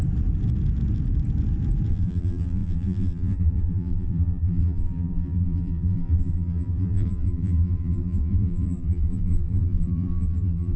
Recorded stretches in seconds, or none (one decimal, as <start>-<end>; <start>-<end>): 0.0-1.9